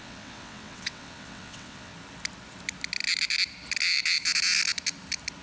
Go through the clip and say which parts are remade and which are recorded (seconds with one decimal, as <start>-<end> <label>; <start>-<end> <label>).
0.0-1.9 remade; 1.9-5.4 recorded